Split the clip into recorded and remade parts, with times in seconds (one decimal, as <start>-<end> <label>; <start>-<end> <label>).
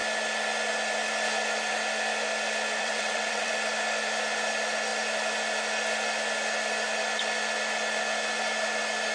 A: 0.0-2.8 recorded; 2.8-3.5 remade; 3.5-9.1 recorded